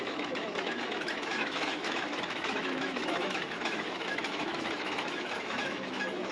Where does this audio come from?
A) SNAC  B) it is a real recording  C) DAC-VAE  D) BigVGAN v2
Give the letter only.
C